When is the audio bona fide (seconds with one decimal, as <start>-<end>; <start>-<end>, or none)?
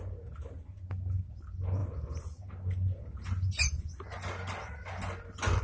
0.0-5.6